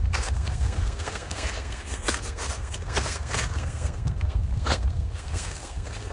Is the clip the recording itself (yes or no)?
no